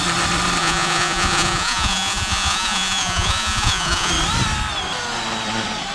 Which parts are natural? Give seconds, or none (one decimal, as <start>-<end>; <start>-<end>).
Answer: 0.0-0.6; 4.1-5.9